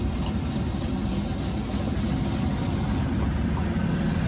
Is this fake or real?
real